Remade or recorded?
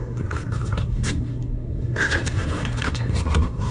remade